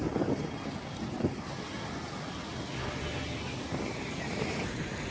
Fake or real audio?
real